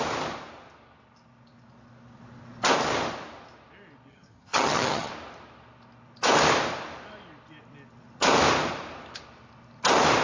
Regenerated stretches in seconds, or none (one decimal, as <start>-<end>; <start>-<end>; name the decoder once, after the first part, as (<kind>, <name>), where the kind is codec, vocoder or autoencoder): 4.1-5.1 (vocoder, HiFi-GAN)

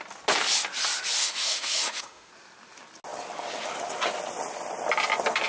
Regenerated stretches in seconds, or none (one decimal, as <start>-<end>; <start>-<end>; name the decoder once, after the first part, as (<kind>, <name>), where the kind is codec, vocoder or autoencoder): 1.2-2.3 (autoencoder, DAC-VAE)

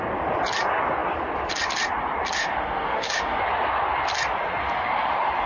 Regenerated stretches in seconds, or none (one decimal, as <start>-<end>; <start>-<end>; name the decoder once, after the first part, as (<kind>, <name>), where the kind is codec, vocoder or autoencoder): 2.4-3.4 (autoencoder, DAC-VAE); 4.6-5.1

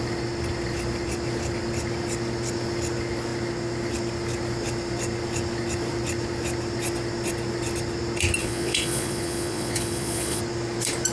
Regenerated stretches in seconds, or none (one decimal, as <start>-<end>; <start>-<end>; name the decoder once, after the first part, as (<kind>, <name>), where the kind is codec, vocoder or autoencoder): 8.4-10.4 (vocoder, Vocos)